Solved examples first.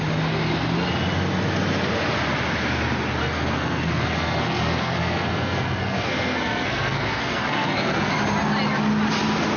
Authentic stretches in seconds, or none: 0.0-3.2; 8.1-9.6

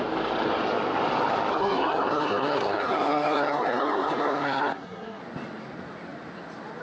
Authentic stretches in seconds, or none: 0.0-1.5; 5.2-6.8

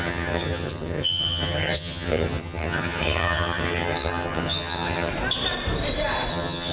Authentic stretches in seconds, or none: 5.1-6.3